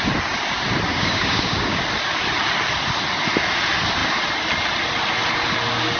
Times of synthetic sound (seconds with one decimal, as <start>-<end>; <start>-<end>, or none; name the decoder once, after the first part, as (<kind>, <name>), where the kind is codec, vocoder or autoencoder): 0.9-1.8 (codec, DAC)